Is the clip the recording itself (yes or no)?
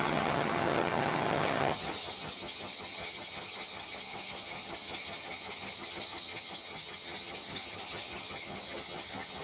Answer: no